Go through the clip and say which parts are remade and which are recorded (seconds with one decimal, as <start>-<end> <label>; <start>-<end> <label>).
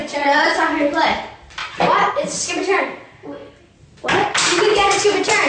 0.0-0.6 remade; 0.6-5.5 recorded